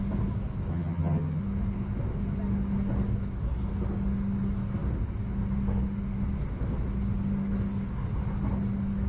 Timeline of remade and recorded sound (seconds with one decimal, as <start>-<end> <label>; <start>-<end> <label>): 0.0-0.7 recorded; 0.7-1.4 remade; 1.4-9.1 recorded